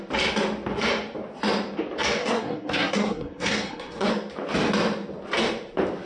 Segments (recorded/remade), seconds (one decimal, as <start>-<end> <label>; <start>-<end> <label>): 0.0-2.2 recorded; 2.2-4.1 remade; 4.1-6.1 recorded

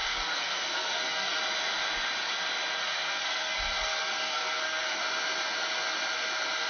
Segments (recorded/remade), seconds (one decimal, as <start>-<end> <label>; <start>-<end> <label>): 0.0-1.4 remade; 1.4-2.8 recorded; 2.8-5.0 remade; 5.0-6.7 recorded

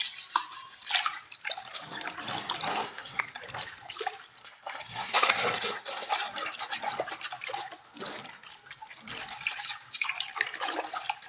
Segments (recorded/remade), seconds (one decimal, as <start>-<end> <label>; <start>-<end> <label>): 0.0-2.7 recorded; 2.7-3.2 remade; 3.2-4.4 recorded; 4.4-6.1 remade; 6.1-11.3 recorded

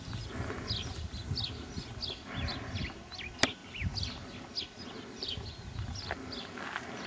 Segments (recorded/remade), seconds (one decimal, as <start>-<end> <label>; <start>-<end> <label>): 0.0-7.1 recorded

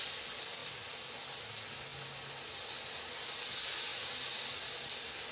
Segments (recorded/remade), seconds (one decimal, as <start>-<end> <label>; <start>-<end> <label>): 0.0-5.3 recorded

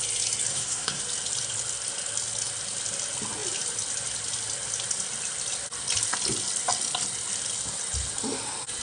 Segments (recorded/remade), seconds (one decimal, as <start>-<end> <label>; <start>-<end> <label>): 0.0-0.5 recorded; 0.5-1.0 remade; 1.0-8.8 recorded

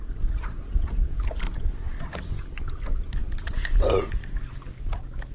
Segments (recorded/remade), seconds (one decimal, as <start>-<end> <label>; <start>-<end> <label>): 0.0-5.3 recorded